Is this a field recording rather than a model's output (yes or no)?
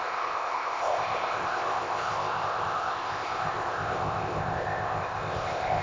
no